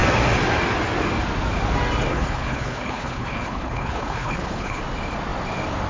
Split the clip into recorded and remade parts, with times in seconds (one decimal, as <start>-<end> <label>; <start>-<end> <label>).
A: 0.0-2.1 recorded; 2.1-4.8 remade; 4.8-5.9 recorded